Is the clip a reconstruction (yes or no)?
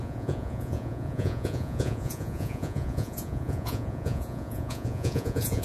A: yes